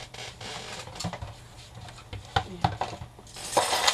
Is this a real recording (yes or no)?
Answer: yes